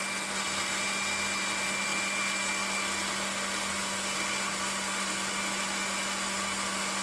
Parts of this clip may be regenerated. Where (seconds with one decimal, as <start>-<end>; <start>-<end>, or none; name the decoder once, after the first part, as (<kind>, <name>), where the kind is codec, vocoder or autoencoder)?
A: none

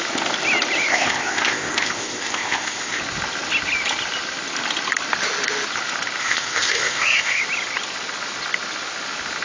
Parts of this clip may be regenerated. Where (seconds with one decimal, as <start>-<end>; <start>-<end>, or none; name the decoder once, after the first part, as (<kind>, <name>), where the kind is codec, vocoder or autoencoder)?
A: 0.9-3.0 (codec, ZipCodec); 6.2-7.4

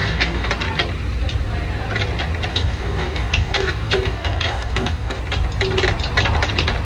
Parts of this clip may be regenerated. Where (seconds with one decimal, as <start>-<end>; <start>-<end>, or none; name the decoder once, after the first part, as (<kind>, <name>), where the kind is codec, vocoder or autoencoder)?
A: 0.0-0.5 (codec, DAC); 2.5-5.2

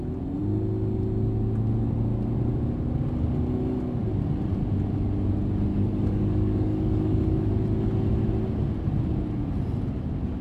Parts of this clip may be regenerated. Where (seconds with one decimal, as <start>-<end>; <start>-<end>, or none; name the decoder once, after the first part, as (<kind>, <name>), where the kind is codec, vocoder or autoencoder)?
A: 5.7-7.5 (codec, DAC)